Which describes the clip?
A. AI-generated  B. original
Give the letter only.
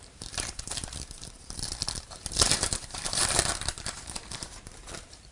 A